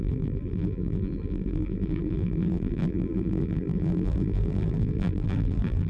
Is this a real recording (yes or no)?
no